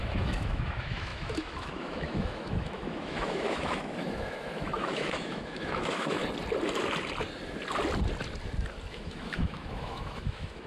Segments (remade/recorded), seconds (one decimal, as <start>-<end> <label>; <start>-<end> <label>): 0.0-6.2 remade; 6.2-8.9 recorded; 8.9-10.7 remade